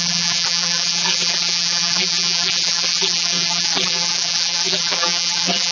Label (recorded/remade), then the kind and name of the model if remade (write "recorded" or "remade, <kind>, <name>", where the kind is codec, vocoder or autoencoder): remade, vocoder, BigVGAN v2